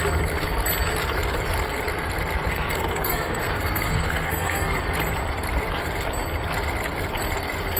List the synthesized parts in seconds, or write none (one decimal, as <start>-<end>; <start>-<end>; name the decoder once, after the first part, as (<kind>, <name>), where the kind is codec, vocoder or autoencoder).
2.5-4.8 (codec, SNAC)